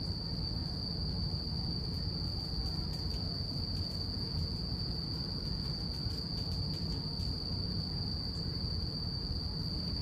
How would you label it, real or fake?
real